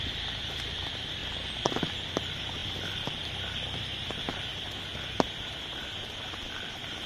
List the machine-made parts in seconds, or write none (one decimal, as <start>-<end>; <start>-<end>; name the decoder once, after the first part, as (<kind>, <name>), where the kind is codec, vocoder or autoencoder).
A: 0.0-4.5 (vocoder, BigVGAN v2); 5.8-7.1